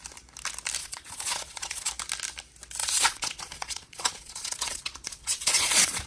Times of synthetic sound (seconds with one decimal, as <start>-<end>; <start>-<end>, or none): 0.8-1.9; 2.8-6.1